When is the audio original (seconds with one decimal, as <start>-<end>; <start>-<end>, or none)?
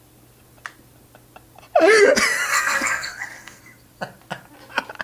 0.0-2.5; 3.6-5.0